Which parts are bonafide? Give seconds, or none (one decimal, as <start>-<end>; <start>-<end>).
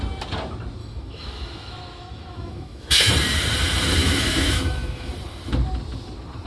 0.0-0.8; 3.1-4.0; 5.1-6.5